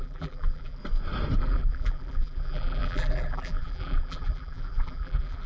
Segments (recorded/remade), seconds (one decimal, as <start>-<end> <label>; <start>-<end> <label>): 0.0-0.8 remade; 0.8-1.4 recorded; 1.4-5.5 remade